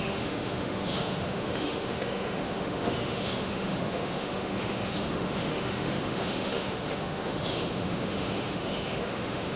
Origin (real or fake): fake